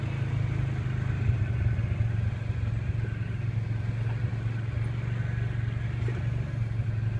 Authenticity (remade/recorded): recorded